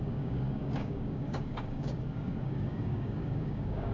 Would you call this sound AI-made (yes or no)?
yes